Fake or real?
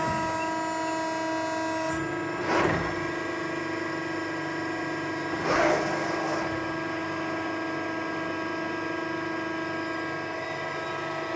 real